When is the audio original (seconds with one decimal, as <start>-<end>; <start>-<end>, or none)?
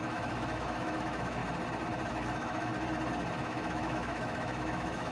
1.4-2.1; 2.7-3.4